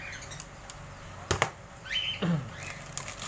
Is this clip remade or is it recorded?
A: recorded